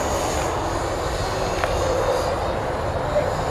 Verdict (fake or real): real